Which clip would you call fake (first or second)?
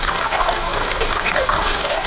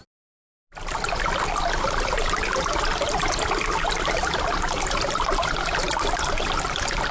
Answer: first